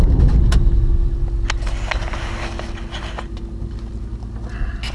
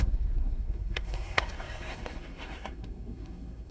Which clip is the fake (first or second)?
second